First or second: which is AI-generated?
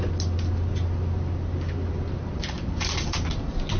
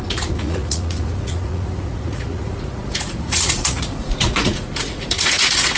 second